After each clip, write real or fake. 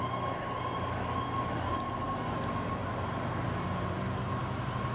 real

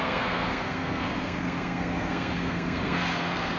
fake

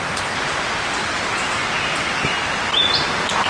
real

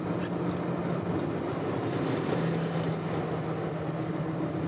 real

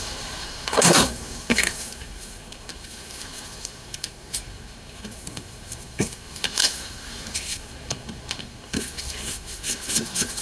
fake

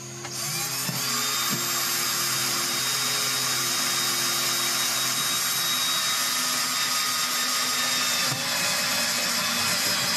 real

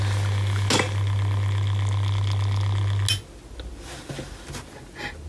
real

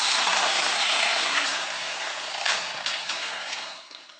fake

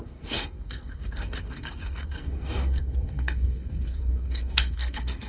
fake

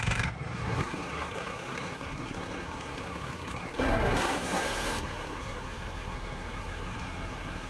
fake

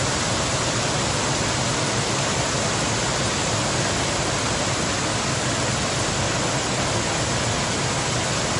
real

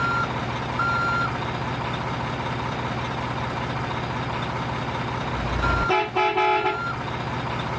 real